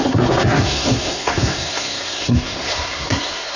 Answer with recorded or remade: remade